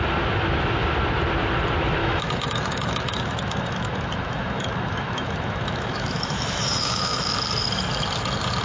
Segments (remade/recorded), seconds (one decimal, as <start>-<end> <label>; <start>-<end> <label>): 0.0-2.0 recorded; 2.0-7.2 remade; 7.2-8.6 recorded